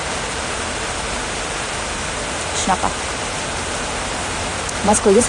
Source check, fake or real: fake